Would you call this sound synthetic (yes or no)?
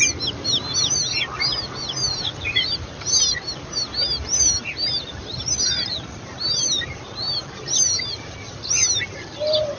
yes